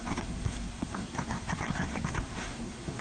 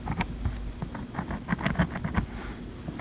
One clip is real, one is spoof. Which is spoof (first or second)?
first